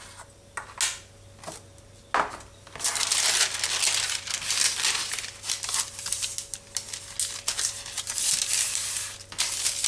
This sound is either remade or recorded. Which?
recorded